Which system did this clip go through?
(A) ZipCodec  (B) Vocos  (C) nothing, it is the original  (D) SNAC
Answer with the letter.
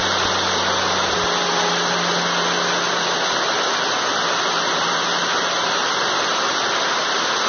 C